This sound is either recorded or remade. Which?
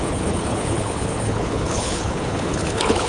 remade